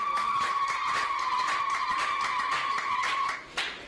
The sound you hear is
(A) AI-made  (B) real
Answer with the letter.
B